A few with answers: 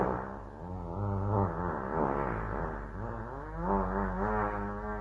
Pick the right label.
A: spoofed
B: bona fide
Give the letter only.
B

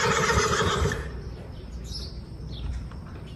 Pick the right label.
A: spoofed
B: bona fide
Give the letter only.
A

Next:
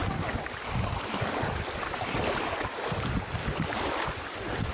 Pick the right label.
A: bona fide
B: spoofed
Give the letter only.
A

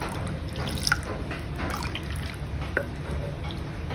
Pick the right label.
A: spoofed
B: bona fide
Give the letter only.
B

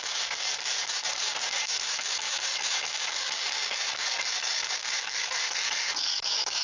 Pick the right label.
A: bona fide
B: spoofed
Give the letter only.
B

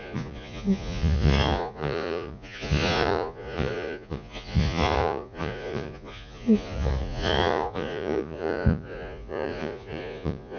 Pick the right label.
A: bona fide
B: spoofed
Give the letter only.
B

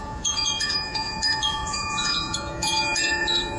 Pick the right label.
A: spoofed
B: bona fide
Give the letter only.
A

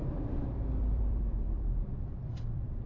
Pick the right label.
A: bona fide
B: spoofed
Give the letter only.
B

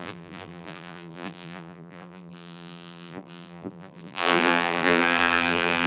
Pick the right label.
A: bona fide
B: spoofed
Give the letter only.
B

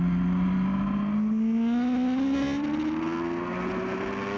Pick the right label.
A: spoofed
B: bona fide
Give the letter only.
B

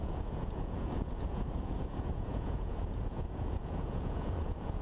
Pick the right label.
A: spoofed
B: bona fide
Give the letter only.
A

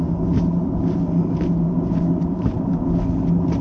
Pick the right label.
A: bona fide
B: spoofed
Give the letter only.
A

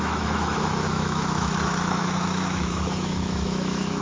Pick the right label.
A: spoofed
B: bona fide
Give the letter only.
A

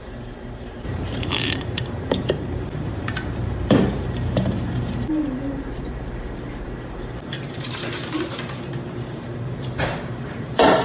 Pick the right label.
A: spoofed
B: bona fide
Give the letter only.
A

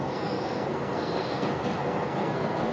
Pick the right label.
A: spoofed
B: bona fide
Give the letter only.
A